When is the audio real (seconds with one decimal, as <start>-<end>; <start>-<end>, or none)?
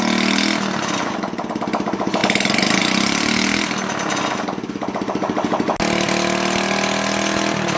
0.0-7.8